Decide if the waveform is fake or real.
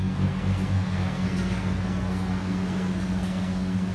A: fake